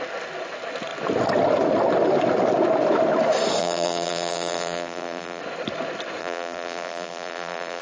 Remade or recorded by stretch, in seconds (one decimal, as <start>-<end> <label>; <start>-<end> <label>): 0.0-3.6 recorded; 3.6-5.4 remade; 5.4-6.2 recorded; 6.2-7.8 remade